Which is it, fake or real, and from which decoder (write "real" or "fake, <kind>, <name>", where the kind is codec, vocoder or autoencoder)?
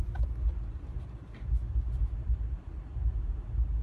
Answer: real